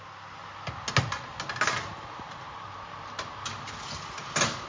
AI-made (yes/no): no